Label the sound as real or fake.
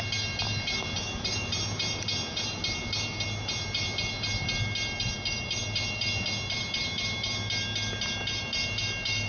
real